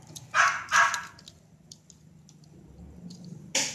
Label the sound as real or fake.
real